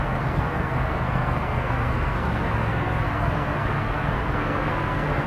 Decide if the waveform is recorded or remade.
remade